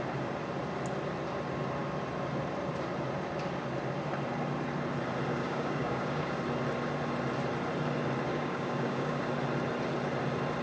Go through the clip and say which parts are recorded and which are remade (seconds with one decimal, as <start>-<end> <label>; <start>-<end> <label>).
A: 0.0-5.3 recorded; 5.3-6.4 remade; 6.4-8.3 recorded; 8.3-9.3 remade; 9.3-10.6 recorded